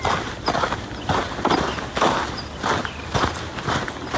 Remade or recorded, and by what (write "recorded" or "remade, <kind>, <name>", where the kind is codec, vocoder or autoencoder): recorded